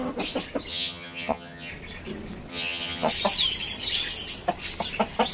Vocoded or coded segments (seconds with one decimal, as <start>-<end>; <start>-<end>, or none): 0.7-1.7; 2.5-3.1